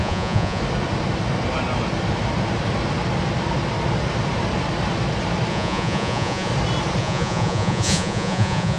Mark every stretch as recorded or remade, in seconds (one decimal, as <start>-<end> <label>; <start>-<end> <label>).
0.0-0.6 remade; 0.6-5.5 recorded; 5.5-6.5 remade; 6.5-7.0 recorded; 7.0-8.8 remade